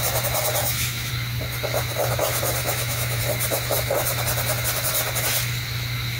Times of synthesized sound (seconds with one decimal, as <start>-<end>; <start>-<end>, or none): 0.6-1.1; 2.6-3.2